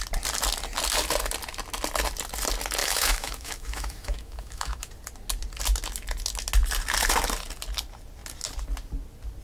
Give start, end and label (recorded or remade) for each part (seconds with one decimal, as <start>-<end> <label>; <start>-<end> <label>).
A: 0.0-2.8 recorded; 2.8-4.9 remade; 4.9-9.4 recorded